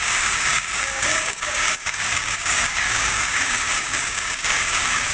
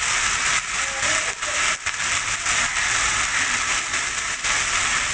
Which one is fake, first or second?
first